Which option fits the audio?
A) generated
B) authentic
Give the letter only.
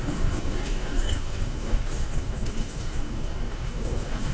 A